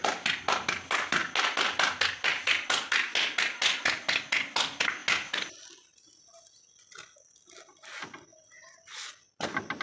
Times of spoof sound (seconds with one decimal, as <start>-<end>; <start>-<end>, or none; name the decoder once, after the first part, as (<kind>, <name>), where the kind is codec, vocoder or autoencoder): none